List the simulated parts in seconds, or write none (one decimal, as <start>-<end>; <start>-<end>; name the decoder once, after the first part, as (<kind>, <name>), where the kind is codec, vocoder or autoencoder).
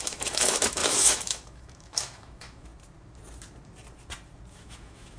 0.0-2.7 (autoencoder, DAC-VAE); 4.5-5.2